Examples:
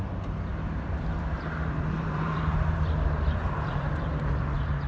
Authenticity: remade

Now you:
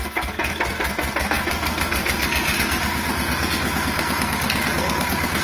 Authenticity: remade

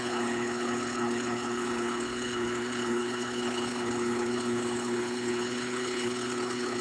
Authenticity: remade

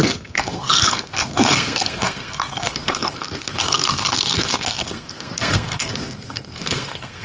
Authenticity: remade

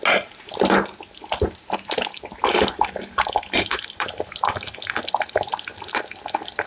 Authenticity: recorded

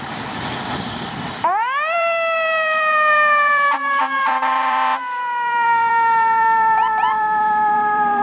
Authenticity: remade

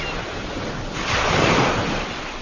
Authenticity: recorded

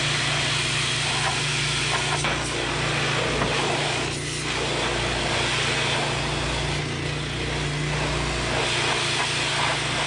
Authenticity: recorded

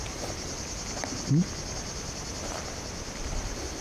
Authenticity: recorded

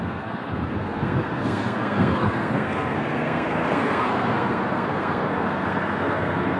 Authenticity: remade